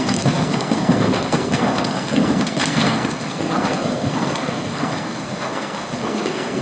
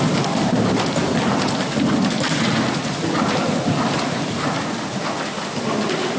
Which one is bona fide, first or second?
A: second